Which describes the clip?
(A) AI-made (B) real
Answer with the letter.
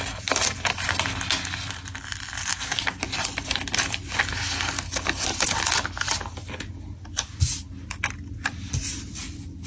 B